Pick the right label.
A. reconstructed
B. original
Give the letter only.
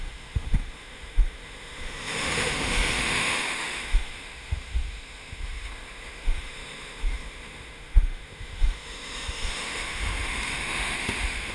A